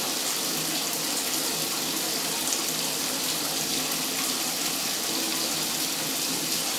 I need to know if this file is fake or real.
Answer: real